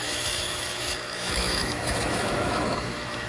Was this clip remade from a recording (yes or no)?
yes